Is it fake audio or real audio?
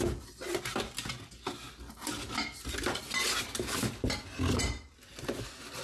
real